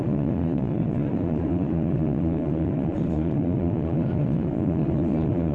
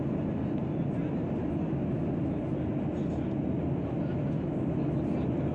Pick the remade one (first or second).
first